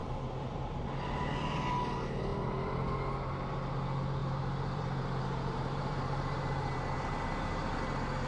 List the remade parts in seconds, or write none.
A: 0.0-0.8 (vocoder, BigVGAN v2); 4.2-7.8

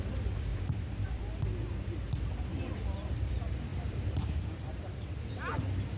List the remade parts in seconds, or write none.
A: 0.5-1.2 (vocoder, BigVGAN v2); 2.5-3.3; 3.7-5.6

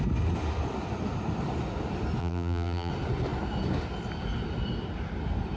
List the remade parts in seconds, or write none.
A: 2.2-2.9 (vocoder, BigVGAN v2)

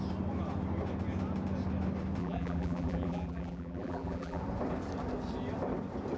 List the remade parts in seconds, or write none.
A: 2.2-4.4 (vocoder, BigVGAN v2)